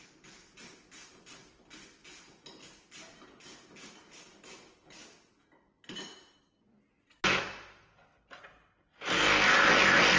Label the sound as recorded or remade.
recorded